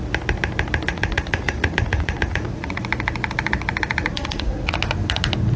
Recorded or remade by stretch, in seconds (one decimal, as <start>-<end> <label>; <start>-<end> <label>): 0.0-0.9 recorded; 0.9-2.8 remade; 2.8-4.1 recorded; 4.1-4.8 remade; 4.8-5.6 recorded